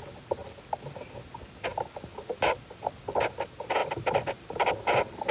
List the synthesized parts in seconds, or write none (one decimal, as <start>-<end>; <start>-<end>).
3.8-4.7